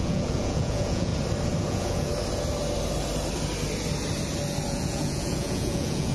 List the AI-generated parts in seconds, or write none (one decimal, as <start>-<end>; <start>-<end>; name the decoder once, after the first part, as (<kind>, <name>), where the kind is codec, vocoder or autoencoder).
0.0-1.1 (vocoder, Vocos); 1.6-2.1; 4.7-6.1